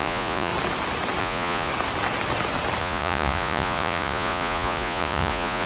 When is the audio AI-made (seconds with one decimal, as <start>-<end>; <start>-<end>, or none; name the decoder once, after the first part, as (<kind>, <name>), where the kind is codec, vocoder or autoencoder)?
0.0-0.5 (vocoder, Vocos); 1.2-1.7; 2.8-5.7